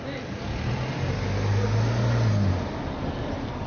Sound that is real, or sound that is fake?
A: real